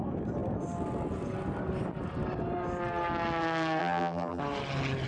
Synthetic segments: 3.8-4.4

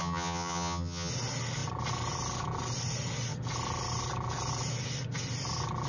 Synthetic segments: 0.0-1.1